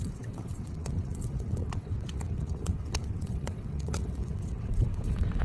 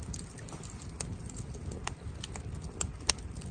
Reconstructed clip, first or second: first